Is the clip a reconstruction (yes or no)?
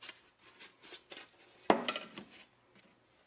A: no